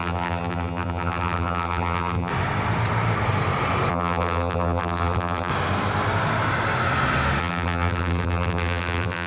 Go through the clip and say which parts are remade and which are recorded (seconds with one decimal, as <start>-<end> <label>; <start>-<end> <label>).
0.0-2.3 remade; 2.3-3.9 recorded; 3.9-5.5 remade; 5.5-7.4 recorded; 7.4-9.3 remade